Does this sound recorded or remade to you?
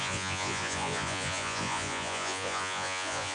remade